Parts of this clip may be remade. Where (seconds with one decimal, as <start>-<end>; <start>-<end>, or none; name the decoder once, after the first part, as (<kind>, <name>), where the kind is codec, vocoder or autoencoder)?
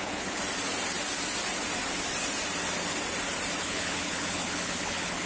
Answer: 0.0-0.4 (codec, HILCodec); 3.6-5.3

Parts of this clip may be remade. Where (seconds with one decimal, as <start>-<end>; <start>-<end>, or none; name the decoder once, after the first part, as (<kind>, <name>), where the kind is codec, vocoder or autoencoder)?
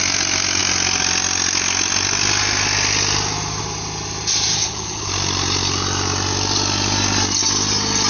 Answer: 4.5-5.1 (codec, HILCodec)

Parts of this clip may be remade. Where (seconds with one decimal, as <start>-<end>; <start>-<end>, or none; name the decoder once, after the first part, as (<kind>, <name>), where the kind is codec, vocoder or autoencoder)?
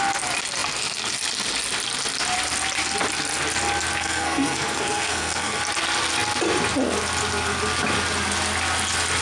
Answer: 4.0-5.6 (codec, SNAC)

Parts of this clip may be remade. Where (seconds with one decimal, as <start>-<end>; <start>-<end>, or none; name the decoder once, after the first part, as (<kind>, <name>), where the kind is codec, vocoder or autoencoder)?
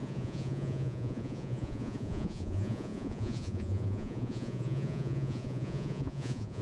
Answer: 0.0-6.6 (vocoder, Vocos)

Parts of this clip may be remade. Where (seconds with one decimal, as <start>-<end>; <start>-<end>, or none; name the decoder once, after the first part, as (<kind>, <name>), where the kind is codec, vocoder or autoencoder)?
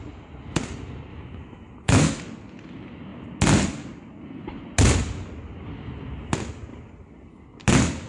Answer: 1.1-2.2 (autoencoder, DAC-VAE)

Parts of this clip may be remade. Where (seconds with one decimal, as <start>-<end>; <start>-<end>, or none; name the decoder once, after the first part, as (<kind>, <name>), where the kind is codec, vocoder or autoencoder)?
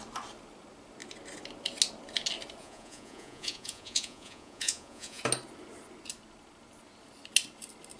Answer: 2.6-5.2 (vocoder, Vocos)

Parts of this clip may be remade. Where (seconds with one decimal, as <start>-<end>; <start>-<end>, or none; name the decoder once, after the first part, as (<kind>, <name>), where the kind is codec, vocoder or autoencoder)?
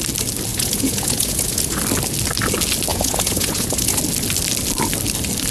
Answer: 0.5-1.8 (vocoder, Vocos); 2.9-4.0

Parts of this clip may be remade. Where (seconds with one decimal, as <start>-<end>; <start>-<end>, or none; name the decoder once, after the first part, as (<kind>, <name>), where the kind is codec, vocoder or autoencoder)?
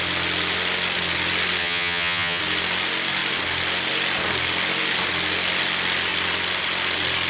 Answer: 1.6-2.4 (vocoder, HiFi-GAN)